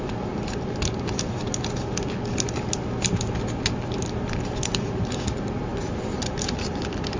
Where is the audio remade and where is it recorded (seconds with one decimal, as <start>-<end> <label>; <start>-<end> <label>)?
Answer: 0.0-7.2 recorded